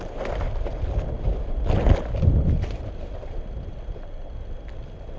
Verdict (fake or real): real